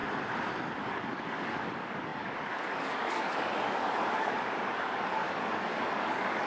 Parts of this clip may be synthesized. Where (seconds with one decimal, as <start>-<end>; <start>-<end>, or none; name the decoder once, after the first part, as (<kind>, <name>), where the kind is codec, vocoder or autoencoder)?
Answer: 0.8-6.5 (codec, DAC)